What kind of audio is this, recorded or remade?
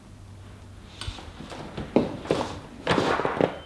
recorded